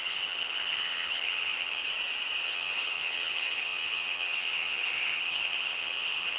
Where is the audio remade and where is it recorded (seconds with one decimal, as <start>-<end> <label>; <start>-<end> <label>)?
0.0-1.8 remade; 1.8-2.4 recorded; 2.4-6.4 remade